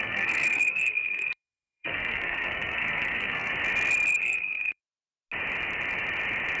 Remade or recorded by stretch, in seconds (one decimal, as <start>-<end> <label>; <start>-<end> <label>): 0.0-3.5 remade; 3.5-4.2 recorded; 4.2-4.8 remade; 4.8-6.6 recorded